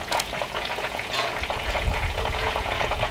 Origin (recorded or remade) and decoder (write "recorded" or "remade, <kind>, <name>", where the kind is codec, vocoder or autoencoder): remade, vocoder, Vocos